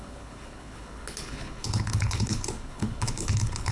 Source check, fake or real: fake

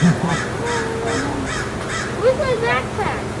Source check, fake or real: real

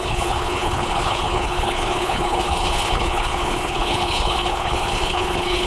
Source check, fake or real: fake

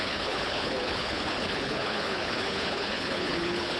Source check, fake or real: fake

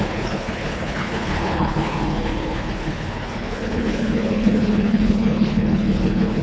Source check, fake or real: fake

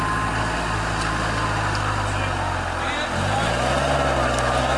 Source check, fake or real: real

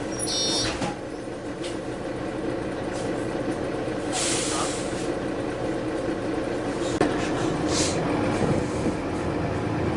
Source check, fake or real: real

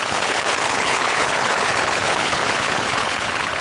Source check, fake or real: fake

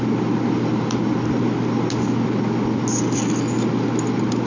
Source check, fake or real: real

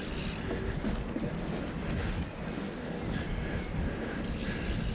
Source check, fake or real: real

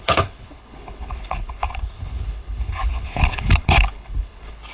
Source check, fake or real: fake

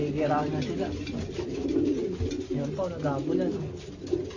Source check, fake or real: real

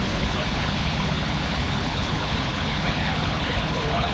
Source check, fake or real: fake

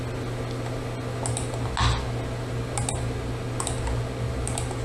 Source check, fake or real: real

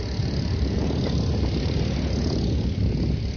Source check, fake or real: real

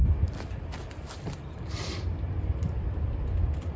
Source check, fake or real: real